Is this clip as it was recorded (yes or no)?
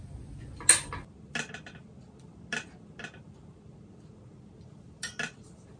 yes